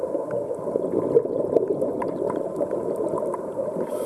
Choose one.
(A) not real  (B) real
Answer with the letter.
B